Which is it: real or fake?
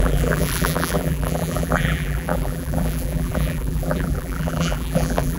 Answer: fake